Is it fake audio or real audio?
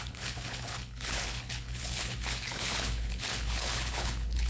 fake